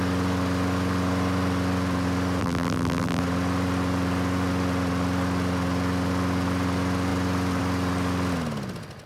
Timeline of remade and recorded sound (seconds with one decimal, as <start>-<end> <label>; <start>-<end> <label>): 0.0-2.4 recorded; 2.4-3.2 remade; 3.2-9.1 recorded